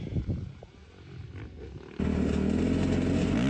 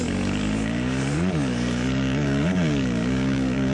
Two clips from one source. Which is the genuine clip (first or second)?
first